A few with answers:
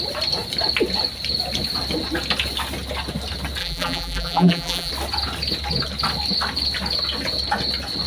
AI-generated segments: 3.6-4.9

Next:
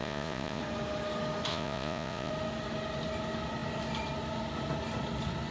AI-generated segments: 0.0-0.6; 1.5-2.3